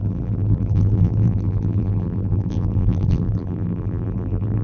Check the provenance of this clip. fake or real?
fake